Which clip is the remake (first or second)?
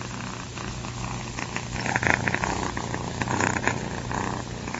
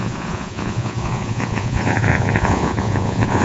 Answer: second